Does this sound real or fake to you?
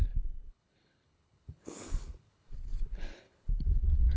fake